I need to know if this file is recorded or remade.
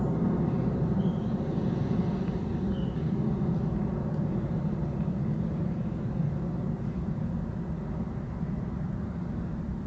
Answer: recorded